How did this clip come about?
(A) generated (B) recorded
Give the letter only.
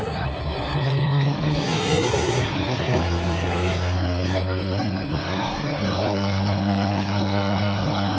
A